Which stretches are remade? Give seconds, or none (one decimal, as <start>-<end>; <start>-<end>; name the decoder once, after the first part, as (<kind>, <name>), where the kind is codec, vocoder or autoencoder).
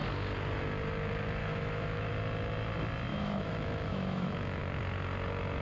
1.4-2.1 (autoencoder, DAC-VAE); 3.1-4.6